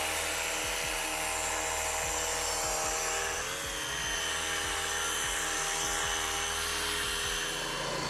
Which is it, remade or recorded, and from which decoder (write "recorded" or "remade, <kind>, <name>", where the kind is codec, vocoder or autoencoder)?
recorded